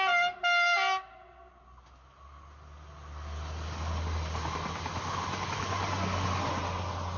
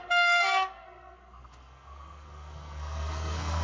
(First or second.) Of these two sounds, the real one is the first